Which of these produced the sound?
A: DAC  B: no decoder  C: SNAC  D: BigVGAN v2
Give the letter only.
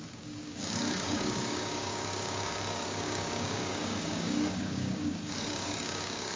A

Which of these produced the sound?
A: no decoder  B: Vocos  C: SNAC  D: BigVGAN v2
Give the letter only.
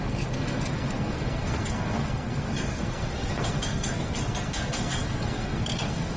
C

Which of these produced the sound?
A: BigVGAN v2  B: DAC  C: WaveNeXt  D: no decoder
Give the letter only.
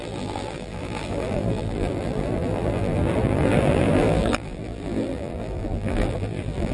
A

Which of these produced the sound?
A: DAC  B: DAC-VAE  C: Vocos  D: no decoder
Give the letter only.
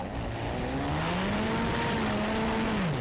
D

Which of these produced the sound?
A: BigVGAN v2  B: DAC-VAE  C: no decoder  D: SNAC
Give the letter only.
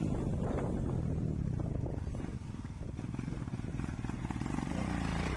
A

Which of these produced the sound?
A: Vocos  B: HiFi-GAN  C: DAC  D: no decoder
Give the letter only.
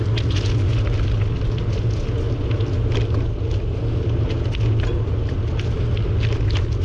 D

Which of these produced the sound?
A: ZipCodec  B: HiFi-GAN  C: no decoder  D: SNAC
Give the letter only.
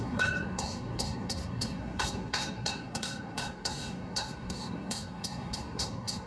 D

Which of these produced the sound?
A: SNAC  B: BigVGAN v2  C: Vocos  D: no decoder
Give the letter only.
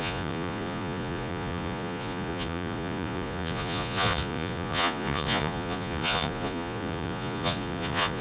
C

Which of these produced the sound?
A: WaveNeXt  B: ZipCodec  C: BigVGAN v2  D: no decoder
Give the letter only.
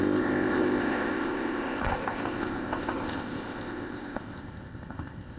B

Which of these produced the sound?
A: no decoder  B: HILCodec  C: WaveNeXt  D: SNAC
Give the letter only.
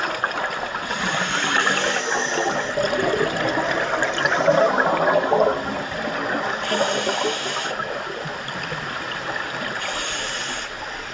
A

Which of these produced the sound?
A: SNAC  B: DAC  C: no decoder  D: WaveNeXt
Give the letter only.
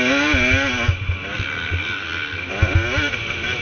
C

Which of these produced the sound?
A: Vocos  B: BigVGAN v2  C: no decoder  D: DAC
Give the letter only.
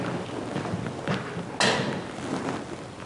C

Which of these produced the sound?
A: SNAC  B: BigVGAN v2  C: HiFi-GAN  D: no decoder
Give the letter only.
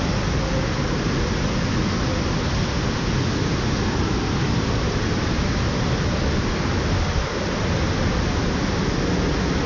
D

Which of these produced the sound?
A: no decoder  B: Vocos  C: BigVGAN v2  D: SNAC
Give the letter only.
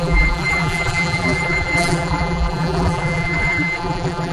C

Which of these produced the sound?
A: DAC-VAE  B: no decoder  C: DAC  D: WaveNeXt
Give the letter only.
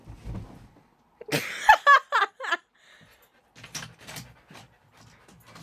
B